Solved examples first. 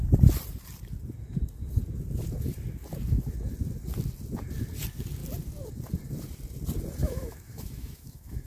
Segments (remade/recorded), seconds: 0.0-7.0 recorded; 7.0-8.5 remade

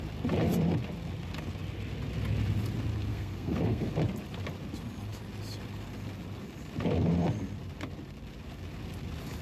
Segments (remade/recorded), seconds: 0.0-3.1 recorded; 3.1-3.9 remade; 3.9-9.4 recorded

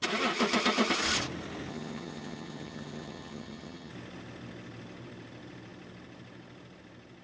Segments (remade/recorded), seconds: 0.0-1.7 recorded; 1.7-3.9 remade; 3.9-7.2 recorded

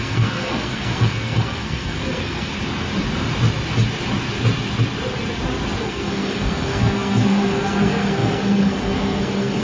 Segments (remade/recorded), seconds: 0.0-2.5 remade; 2.5-5.8 recorded; 5.8-9.6 remade

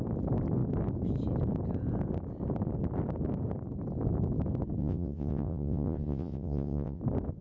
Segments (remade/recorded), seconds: 0.0-4.8 recorded; 4.8-7.0 remade; 7.0-7.4 recorded